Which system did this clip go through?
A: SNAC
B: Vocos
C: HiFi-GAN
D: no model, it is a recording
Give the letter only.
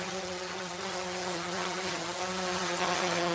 C